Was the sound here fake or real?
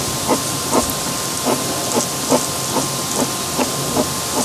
real